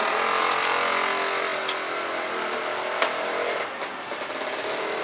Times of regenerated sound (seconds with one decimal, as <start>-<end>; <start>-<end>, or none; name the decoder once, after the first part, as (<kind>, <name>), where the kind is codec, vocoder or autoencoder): none